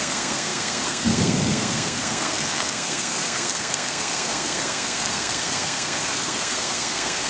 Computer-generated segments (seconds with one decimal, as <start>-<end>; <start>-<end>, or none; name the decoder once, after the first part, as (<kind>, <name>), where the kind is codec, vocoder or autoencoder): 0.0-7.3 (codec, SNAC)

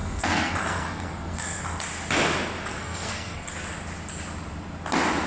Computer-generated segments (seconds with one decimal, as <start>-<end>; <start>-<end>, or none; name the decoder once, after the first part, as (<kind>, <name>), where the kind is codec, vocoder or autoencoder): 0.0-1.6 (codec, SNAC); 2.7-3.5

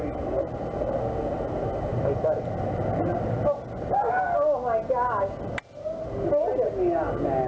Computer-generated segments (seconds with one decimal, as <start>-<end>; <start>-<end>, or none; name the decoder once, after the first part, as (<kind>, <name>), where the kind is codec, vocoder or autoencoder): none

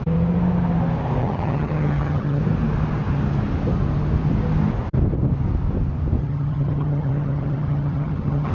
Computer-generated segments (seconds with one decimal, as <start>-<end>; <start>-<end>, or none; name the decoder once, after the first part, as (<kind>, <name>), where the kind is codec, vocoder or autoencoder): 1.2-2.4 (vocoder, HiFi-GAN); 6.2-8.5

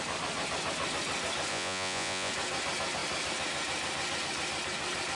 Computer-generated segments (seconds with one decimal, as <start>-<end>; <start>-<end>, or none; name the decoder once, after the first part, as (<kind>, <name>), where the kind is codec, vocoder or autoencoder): 1.5-2.3 (vocoder, Vocos)